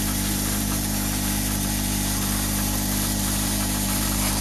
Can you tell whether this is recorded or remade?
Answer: remade